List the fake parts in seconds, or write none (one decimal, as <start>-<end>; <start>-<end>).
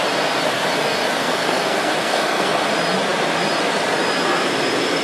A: 1.2-2.6